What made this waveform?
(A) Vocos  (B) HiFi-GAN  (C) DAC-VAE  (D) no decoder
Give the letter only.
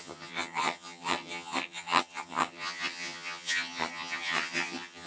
B